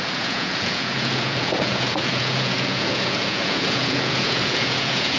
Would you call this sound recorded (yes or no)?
no